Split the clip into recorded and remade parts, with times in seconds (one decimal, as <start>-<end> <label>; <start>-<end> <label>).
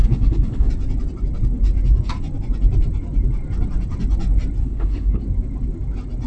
0.0-0.7 remade; 0.7-4.6 recorded; 4.6-5.2 remade; 5.2-6.3 recorded